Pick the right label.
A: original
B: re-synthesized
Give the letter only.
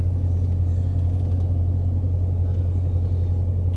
A